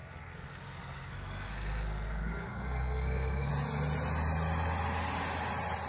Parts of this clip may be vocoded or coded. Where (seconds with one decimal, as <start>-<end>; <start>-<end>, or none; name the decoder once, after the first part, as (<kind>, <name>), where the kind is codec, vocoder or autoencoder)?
0.0-3.5 (codec, SNAC)